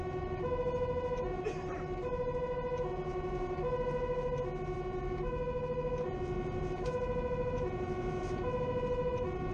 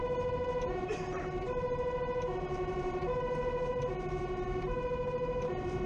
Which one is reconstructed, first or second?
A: second